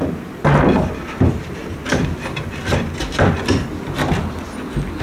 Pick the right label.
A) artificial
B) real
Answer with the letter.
B